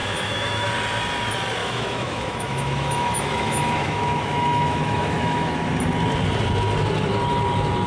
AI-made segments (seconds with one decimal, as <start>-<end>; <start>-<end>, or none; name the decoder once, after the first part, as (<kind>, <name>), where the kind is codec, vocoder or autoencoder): 0.0-0.7 (autoencoder, DAC-VAE); 1.6-5.7